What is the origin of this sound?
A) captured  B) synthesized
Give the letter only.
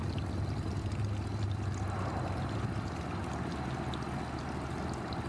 A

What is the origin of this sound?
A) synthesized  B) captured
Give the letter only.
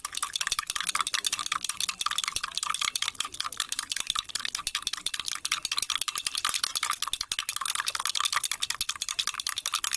B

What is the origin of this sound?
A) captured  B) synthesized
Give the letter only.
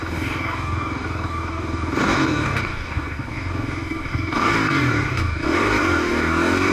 B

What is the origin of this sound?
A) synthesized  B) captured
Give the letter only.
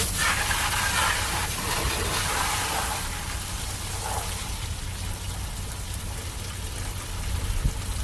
B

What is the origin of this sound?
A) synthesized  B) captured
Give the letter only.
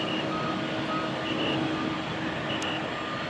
B